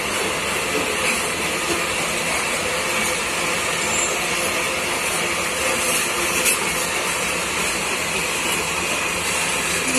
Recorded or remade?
recorded